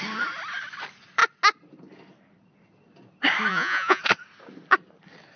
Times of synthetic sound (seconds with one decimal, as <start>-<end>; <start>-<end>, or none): 3.5-4.0